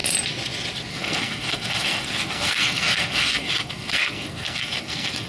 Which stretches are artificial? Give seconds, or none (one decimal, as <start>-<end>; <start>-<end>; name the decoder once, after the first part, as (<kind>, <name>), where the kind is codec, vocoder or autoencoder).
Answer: 0.9-5.3 (codec, SNAC)

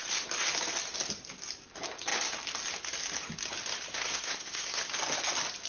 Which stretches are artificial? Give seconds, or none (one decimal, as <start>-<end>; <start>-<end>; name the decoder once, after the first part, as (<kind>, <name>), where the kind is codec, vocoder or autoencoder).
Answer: 3.9-4.8 (codec, SNAC)